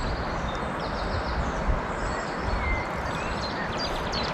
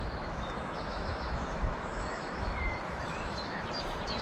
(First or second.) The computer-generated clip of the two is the second